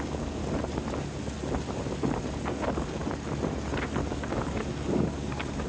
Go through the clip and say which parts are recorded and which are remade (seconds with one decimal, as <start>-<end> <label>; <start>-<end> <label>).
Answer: 0.0-0.4 remade; 0.4-2.5 recorded; 2.5-3.0 remade; 3.0-4.1 recorded; 4.1-5.7 remade

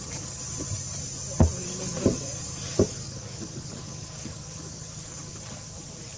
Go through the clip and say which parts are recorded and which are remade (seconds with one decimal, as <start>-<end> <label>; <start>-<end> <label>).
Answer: 0.0-1.6 recorded; 1.6-5.3 remade; 5.3-6.2 recorded